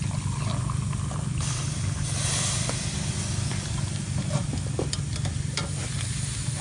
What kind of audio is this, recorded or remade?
recorded